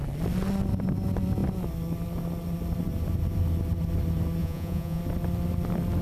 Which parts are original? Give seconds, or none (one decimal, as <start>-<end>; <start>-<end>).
0.0-4.4; 5.0-6.0